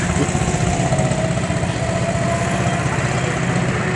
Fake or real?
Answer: real